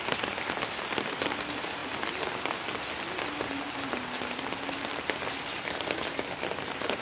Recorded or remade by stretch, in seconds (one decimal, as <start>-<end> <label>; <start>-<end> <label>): 0.0-7.0 recorded